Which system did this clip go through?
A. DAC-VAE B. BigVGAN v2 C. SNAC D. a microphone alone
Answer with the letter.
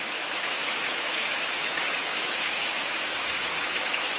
A